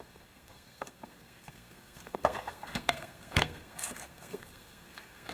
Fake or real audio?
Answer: fake